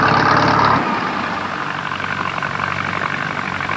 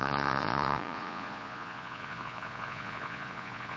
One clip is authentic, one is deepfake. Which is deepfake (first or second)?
second